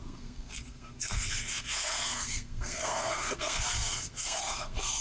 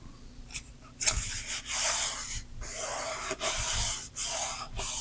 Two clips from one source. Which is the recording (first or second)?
second